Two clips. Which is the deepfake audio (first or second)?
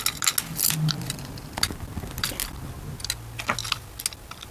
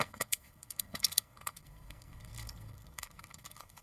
second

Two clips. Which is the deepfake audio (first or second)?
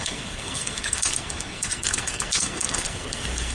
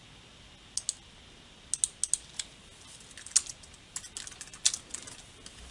first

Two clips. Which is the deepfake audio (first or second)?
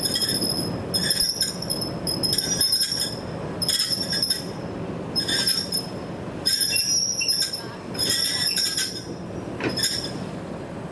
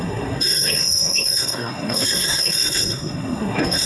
second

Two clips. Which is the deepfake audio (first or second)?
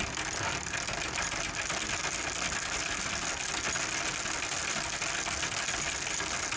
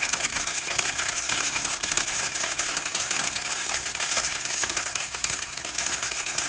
second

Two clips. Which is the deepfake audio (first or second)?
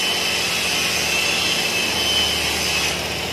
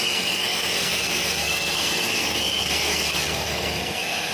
second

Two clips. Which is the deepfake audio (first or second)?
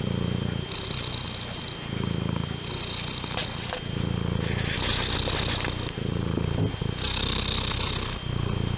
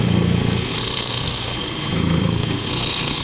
second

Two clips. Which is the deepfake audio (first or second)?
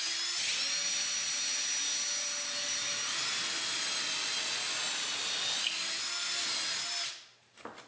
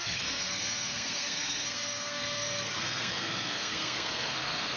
second